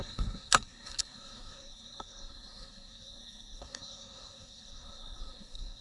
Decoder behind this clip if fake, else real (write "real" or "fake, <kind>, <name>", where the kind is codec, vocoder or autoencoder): fake, codec, SNAC